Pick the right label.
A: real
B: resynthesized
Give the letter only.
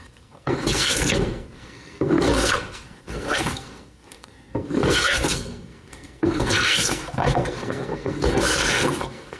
B